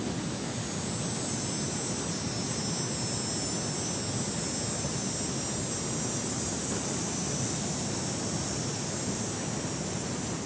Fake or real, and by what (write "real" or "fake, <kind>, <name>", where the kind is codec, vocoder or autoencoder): real